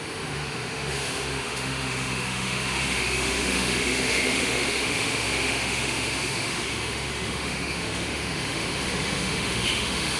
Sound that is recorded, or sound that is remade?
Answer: remade